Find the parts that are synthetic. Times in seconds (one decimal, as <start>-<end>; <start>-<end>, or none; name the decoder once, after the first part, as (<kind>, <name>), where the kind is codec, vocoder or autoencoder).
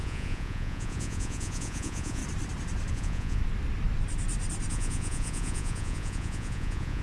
0.0-2.2 (vocoder, Vocos); 2.9-3.4; 4.7-7.0